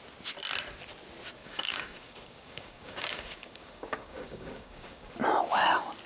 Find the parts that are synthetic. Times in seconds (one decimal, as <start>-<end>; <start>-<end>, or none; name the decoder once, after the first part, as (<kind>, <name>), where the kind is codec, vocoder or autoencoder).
1.4-5.1 (codec, DAC)